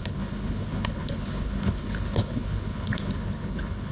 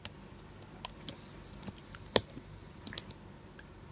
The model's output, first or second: first